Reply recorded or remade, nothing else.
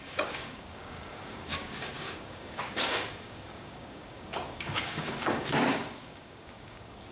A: remade